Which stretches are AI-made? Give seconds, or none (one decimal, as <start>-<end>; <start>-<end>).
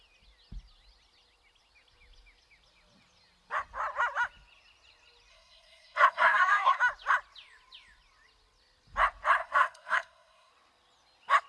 5.3-6.8; 9.4-10.5